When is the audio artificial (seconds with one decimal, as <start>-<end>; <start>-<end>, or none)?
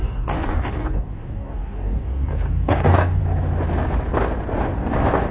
0.0-3.2